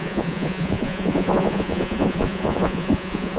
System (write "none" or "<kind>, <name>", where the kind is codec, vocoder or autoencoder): vocoder, Vocos